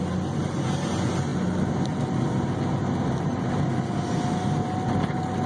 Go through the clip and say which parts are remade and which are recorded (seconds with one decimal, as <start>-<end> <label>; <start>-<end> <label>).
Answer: 0.0-5.5 recorded